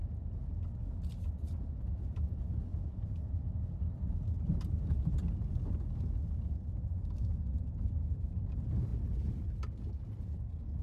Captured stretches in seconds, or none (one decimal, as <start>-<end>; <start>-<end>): 0.0-2.7; 3.5-10.8